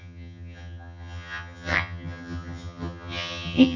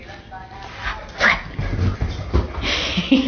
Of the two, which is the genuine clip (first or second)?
second